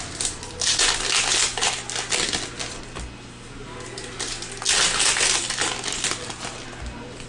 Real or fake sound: real